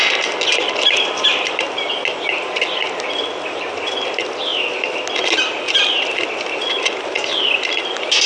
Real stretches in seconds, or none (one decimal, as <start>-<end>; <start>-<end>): 0.0-8.3